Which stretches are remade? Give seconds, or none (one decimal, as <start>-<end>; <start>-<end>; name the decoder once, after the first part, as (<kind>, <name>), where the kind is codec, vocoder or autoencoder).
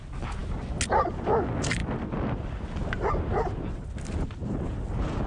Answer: none